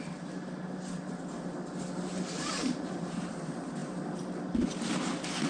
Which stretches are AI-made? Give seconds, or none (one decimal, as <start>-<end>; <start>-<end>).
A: 2.1-3.4